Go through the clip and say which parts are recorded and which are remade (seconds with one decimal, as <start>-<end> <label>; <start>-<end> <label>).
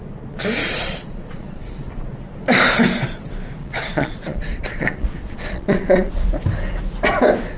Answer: 0.0-0.6 recorded; 0.6-1.9 remade; 1.9-3.6 recorded; 3.6-6.1 remade; 6.1-7.6 recorded